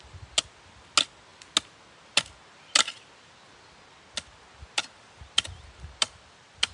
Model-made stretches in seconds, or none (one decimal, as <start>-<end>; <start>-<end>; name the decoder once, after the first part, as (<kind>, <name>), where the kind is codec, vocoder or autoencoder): none